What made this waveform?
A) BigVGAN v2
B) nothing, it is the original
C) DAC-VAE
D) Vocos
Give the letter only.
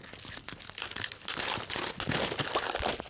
B